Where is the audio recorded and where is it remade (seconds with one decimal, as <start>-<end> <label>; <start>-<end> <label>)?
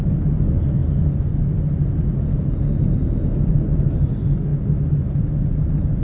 0.0-6.0 recorded